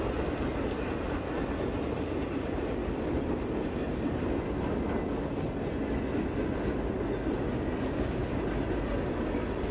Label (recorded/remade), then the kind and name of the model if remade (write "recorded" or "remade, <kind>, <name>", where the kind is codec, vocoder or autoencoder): recorded